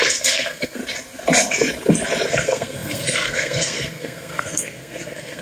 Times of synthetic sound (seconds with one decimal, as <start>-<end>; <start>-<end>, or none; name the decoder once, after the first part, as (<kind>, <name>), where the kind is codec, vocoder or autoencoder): 0.0-0.8 (codec, SNAC); 2.3-5.4